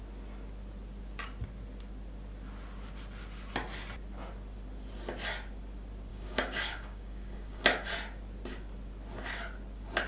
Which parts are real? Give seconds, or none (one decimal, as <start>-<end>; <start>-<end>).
0.0-6.1; 7.9-10.1